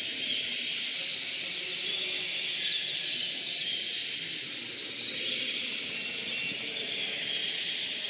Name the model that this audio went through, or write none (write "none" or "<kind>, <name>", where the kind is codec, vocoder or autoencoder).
none